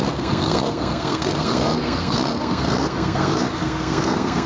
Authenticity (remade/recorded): remade